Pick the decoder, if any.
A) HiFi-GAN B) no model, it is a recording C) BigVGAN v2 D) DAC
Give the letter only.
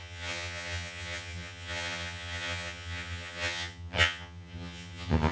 A